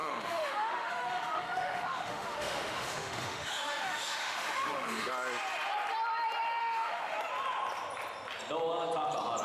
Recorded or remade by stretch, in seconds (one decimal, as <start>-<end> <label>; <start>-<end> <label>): 0.0-5.1 remade; 5.1-6.6 recorded; 6.6-7.2 remade; 7.2-9.4 recorded